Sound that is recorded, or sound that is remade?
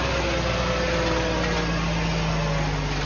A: recorded